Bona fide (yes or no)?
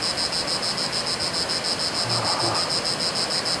yes